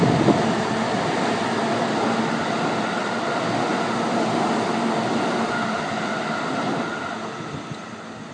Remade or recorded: recorded